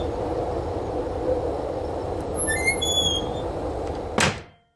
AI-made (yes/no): no